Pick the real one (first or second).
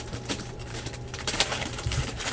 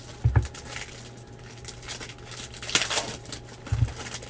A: second